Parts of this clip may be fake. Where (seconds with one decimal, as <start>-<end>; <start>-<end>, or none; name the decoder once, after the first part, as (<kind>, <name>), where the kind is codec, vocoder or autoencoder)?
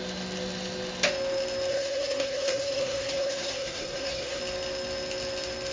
1.7-4.4 (codec, SNAC)